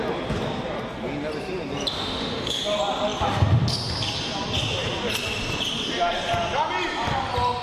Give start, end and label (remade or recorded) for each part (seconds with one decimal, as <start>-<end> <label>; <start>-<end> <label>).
0.0-1.9 recorded; 1.9-2.6 remade; 2.6-7.6 recorded